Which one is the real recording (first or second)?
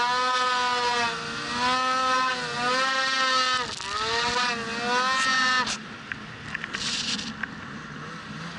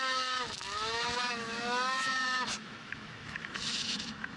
first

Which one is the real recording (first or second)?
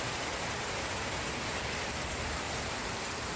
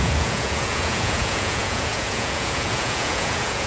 first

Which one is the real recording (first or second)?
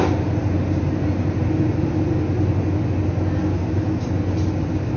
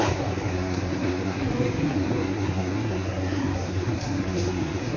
first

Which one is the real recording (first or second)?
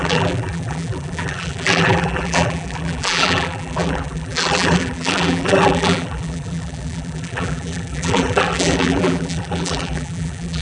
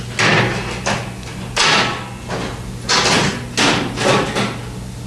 second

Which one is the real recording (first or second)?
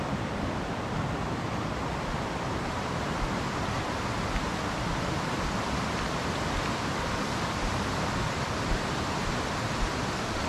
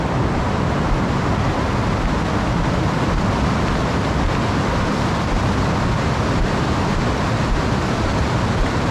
second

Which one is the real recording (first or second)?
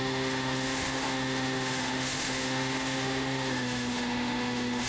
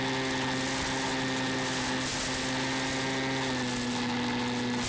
second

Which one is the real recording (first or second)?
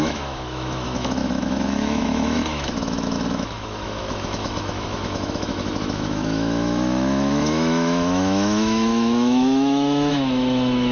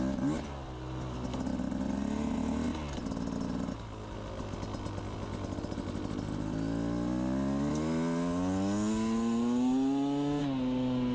second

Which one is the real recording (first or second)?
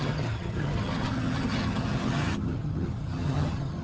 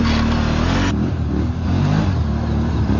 second